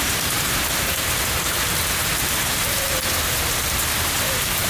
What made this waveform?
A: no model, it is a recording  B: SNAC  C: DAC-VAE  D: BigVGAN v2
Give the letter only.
D